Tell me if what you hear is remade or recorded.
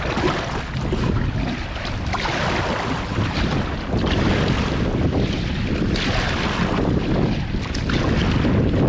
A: recorded